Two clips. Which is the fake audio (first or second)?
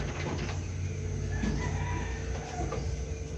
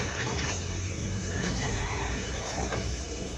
second